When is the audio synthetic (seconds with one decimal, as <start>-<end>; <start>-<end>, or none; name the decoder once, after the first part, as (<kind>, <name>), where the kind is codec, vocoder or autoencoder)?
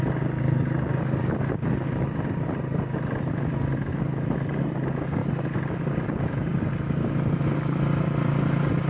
none